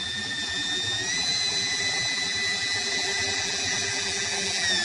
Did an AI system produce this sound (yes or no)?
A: yes